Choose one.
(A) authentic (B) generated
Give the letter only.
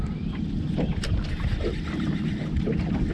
A